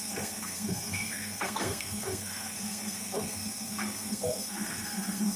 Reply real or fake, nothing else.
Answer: fake